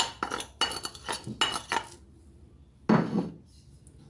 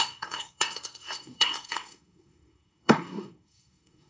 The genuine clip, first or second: first